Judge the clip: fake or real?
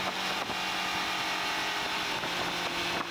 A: real